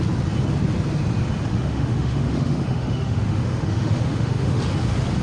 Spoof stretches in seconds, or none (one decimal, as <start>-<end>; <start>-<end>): 1.5-4.6